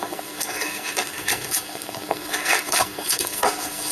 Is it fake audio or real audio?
fake